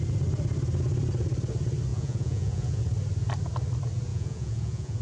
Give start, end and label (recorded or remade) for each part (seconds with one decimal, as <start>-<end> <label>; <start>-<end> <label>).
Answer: 0.0-1.9 recorded; 1.9-2.8 remade; 2.8-4.1 recorded; 4.1-5.0 remade